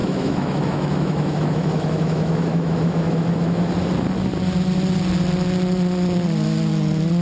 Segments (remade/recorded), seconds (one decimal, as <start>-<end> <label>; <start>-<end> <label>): 0.0-3.7 remade; 3.7-7.2 recorded